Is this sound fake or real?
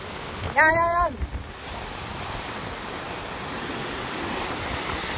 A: real